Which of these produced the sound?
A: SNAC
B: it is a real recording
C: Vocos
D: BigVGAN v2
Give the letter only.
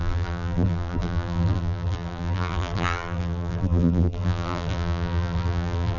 D